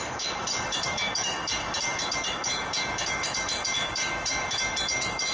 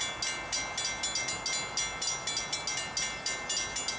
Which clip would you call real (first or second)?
second